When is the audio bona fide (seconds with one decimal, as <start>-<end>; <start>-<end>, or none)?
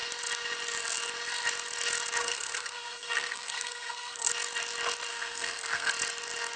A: 0.0-2.2; 4.3-5.1; 5.9-6.6